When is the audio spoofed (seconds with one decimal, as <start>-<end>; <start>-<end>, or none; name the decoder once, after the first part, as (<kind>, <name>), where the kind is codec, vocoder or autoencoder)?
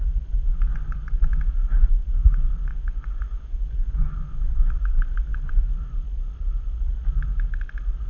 2.7-4.7 (vocoder, Vocos)